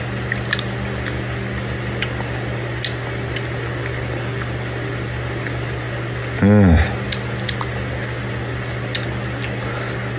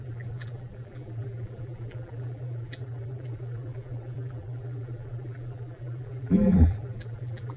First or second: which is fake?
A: second